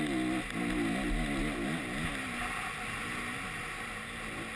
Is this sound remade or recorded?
recorded